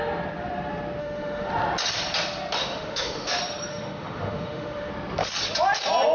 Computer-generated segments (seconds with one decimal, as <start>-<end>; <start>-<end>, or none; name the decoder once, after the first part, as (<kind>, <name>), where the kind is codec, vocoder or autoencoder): 1.0-1.5 (autoencoder, DAC-VAE); 2.6-3.3; 3.7-4.9